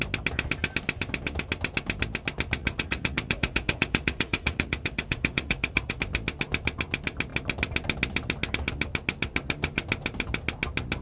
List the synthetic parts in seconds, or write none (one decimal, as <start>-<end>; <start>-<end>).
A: 2.6-6.0